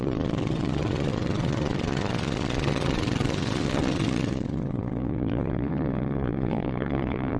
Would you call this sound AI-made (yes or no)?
yes